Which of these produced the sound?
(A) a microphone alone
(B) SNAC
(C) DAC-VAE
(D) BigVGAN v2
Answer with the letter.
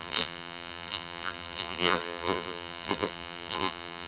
D